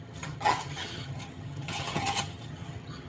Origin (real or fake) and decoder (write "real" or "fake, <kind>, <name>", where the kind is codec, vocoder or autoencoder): fake, vocoder, HiFi-GAN